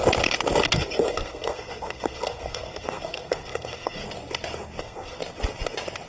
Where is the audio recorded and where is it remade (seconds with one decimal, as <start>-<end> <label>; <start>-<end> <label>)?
0.0-0.6 recorded; 0.6-4.0 remade; 4.0-4.8 recorded; 4.8-5.2 remade; 5.2-6.1 recorded